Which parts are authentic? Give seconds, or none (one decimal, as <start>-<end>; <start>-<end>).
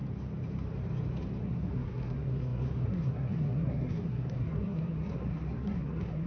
0.0-1.4